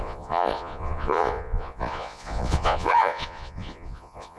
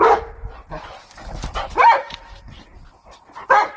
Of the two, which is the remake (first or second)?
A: first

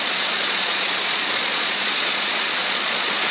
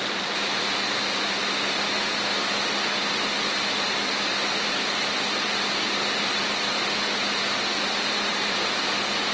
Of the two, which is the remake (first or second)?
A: first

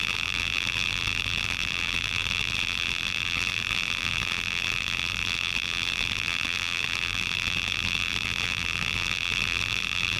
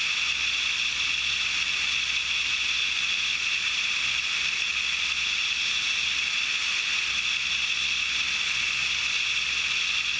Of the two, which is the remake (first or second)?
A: first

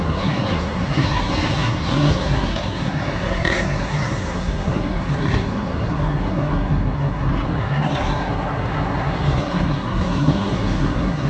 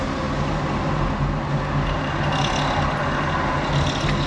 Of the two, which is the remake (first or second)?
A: first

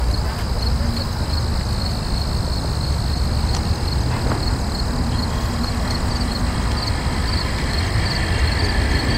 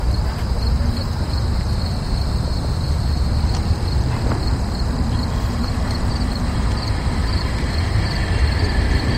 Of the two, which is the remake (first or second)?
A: second